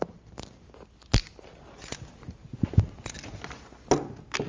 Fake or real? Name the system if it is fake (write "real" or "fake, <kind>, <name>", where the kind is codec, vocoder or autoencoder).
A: real